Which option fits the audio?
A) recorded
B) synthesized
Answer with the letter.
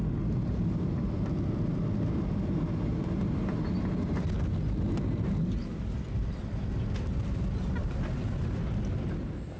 A